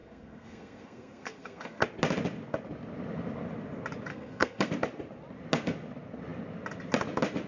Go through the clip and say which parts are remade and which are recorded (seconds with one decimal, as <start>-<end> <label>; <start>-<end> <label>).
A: 0.0-1.8 remade; 1.8-4.1 recorded; 4.1-4.7 remade; 4.7-7.5 recorded